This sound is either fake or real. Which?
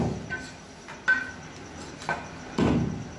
real